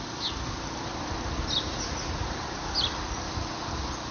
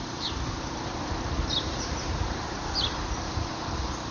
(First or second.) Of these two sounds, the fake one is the second